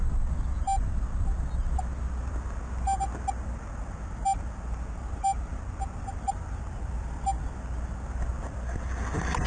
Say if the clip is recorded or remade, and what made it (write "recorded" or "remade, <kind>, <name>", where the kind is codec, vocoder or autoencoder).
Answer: recorded